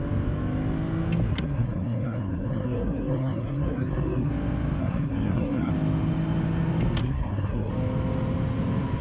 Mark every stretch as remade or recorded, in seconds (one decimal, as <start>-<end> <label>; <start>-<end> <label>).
0.0-1.3 recorded; 1.3-4.3 remade; 4.3-4.8 recorded; 4.8-5.7 remade; 5.7-7.0 recorded; 7.0-7.7 remade; 7.7-9.0 recorded